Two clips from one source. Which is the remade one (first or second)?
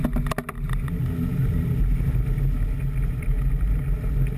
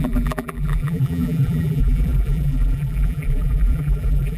second